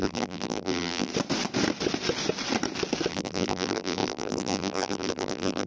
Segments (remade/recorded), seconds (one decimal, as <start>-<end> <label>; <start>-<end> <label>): 0.0-1.1 remade; 1.1-3.1 recorded; 3.1-5.7 remade